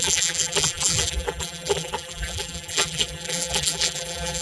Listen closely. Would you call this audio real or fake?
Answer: fake